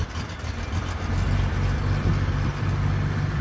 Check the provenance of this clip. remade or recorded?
recorded